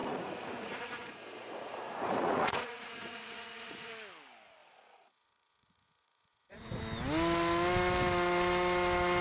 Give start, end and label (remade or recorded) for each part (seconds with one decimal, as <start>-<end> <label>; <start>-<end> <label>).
0.0-3.9 remade; 3.9-4.6 recorded; 4.6-6.8 remade; 6.8-9.2 recorded